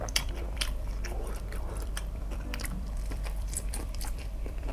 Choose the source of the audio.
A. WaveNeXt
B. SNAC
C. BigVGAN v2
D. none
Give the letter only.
C